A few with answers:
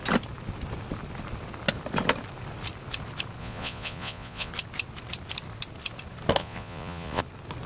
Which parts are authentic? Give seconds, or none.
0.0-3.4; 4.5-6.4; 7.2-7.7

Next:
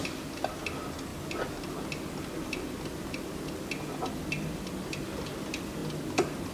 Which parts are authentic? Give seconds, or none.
0.0-6.5

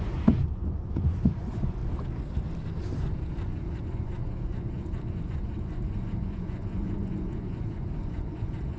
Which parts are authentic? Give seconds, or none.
1.8-3.8

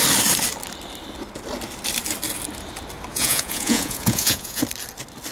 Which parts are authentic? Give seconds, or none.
0.0-3.1; 4.6-5.3

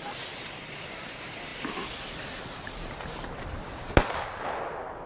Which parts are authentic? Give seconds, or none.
1.5-4.6

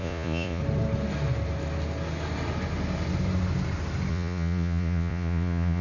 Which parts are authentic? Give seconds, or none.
0.6-4.1

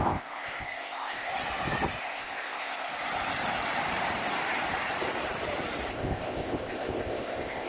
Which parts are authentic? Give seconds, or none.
1.3-2.0; 2.9-5.9

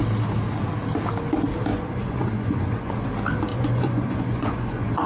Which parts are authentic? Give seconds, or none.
0.0-1.7; 2.9-3.5